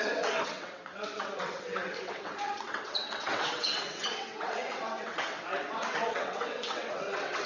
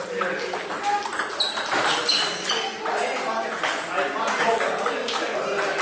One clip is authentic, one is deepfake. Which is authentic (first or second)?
second